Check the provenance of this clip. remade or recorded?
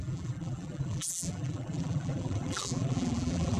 remade